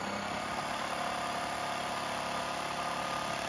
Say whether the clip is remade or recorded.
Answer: remade